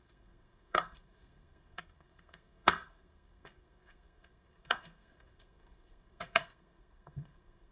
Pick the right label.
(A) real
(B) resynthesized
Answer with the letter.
B